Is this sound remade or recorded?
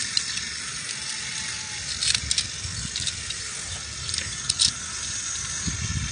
recorded